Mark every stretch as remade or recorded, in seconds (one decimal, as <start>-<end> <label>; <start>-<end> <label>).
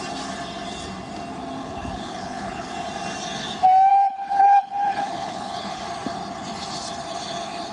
0.0-1.6 recorded; 1.6-2.7 remade; 2.7-3.9 recorded; 3.9-5.8 remade; 5.8-7.7 recorded